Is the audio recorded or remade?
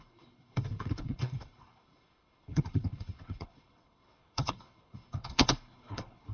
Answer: remade